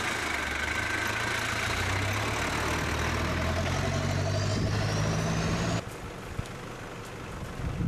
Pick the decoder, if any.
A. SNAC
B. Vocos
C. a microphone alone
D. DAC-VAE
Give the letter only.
C